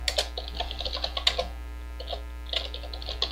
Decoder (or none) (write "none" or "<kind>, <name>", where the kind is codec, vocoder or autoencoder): none